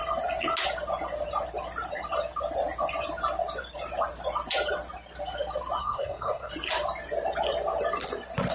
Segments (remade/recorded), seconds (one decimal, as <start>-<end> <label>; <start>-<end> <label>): 0.0-5.8 recorded; 5.8-6.5 remade; 6.5-8.5 recorded